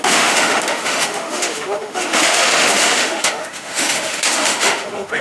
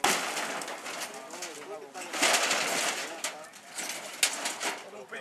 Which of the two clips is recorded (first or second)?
second